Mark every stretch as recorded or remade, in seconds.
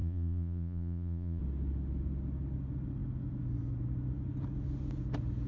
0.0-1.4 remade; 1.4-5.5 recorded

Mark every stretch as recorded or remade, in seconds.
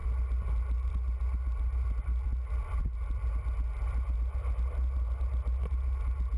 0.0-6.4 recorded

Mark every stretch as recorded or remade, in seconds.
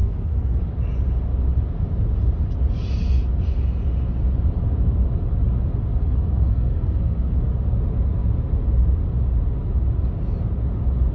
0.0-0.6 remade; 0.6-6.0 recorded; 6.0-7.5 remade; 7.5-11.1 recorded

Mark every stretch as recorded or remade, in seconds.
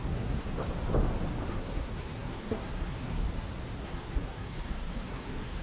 0.0-0.5 remade; 0.5-1.5 recorded; 1.5-3.2 remade; 3.2-3.8 recorded; 3.8-5.6 remade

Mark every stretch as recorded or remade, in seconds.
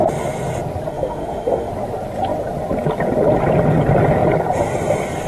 0.0-0.9 recorded; 0.9-1.7 remade; 1.7-5.3 recorded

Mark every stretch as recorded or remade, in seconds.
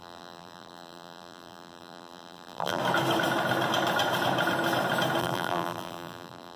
0.0-2.8 remade; 2.8-5.2 recorded; 5.2-6.6 remade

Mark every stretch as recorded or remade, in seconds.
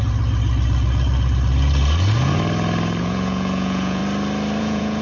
0.0-3.0 recorded; 3.0-4.0 remade; 4.0-4.6 recorded; 4.6-5.0 remade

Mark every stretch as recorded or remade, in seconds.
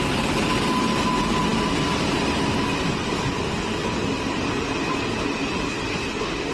0.0-6.5 recorded